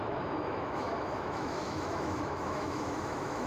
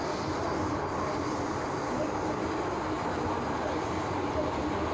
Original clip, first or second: second